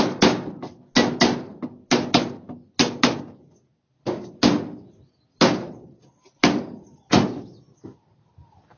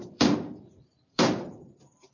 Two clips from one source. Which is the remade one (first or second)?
second